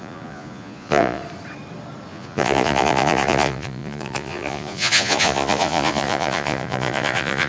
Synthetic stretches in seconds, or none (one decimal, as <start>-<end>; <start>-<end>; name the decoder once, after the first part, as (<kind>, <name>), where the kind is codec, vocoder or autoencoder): 0.0-1.2 (vocoder, Vocos); 2.1-7.5